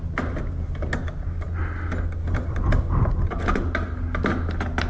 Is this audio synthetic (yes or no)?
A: no